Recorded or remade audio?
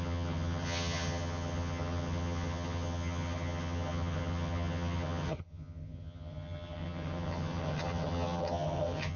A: remade